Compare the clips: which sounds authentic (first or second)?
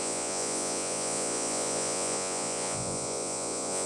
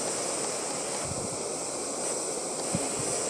second